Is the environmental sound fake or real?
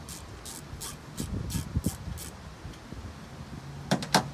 real